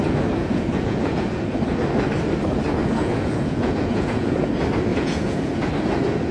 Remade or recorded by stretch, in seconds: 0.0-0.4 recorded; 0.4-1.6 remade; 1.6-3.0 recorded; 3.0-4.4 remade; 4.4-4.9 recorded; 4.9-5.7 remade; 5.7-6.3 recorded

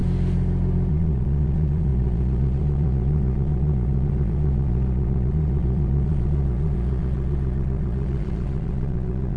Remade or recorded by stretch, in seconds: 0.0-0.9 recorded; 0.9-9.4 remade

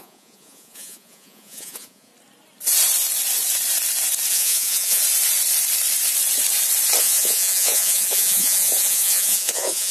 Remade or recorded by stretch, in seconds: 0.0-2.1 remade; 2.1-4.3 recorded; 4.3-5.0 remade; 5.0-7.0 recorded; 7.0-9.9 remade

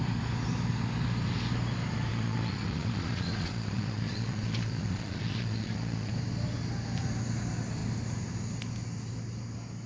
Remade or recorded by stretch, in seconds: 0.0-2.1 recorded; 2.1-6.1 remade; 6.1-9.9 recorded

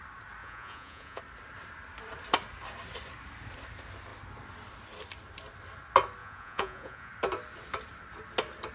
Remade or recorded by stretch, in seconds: 0.0-0.4 recorded; 0.4-1.2 remade; 1.2-6.2 recorded; 6.2-7.1 remade; 7.1-8.7 recorded

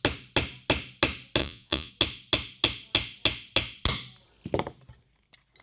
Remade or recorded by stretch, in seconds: 0.0-1.4 recorded; 1.4-1.9 remade; 1.9-5.6 recorded

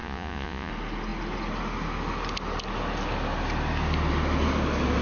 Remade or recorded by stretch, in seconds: 0.0-0.7 remade; 0.7-5.0 recorded

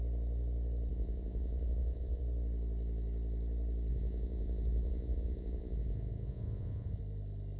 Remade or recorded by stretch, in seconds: 0.0-0.9 recorded; 0.9-2.2 remade; 2.2-3.9 recorded; 3.9-7.0 remade; 7.0-7.6 recorded